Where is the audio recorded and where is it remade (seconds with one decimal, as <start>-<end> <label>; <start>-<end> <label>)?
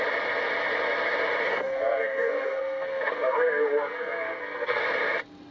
0.0-1.5 recorded; 1.5-4.8 remade; 4.8-5.5 recorded